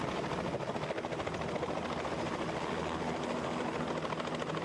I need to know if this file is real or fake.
real